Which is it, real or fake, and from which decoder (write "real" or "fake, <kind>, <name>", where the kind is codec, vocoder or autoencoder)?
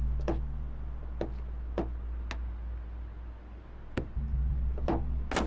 real